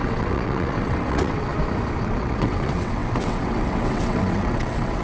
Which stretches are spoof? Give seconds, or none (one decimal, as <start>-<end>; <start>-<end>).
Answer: 0.0-1.5; 2.0-5.0